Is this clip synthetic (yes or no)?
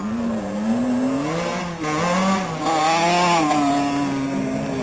no